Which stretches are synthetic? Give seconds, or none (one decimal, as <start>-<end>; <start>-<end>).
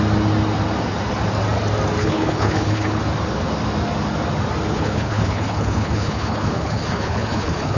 2.0-3.0; 4.7-7.8